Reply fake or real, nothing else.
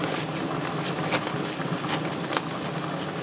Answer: real